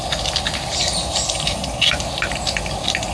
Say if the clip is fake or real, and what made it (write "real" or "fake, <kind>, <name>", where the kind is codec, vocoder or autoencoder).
real